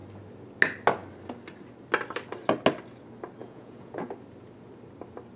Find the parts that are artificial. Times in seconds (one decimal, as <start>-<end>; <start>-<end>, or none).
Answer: 3.4-4.1